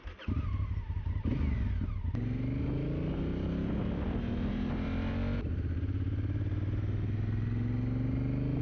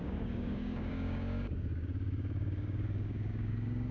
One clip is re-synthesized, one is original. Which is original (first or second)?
first